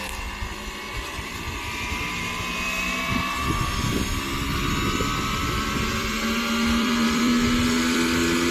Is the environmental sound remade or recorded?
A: remade